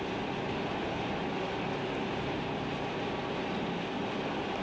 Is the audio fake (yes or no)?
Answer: no